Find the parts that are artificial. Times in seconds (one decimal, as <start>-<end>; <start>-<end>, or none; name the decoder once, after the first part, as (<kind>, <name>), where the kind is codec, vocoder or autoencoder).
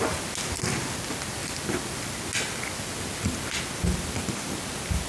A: none